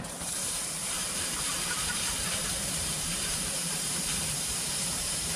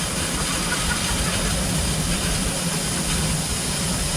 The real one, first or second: second